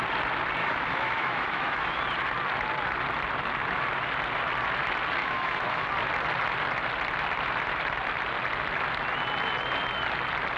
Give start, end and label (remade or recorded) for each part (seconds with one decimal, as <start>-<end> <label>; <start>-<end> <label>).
0.0-0.6 recorded; 0.6-2.0 remade; 2.0-5.2 recorded; 5.2-5.9 remade; 5.9-10.6 recorded